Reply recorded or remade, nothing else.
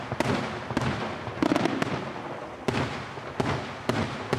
recorded